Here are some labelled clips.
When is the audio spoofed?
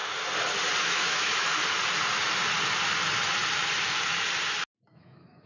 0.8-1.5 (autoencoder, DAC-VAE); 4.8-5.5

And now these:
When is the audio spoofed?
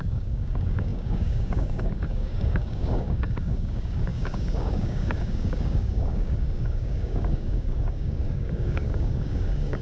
0.0-9.8 (codec, DAC)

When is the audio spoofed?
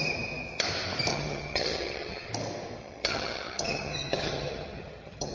1.1-2.3 (vocoder, HiFi-GAN); 2.8-5.3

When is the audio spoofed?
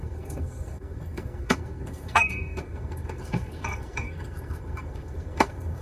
0.0-5.8 (codec, SNAC)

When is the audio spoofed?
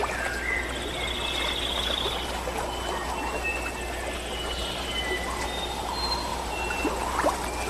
6.3-7.7 (vocoder, BigVGAN v2)